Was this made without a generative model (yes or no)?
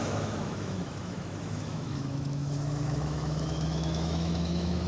no